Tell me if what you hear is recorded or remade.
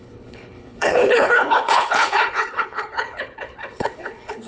remade